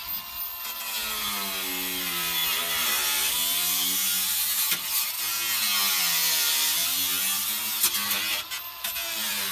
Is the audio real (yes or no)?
yes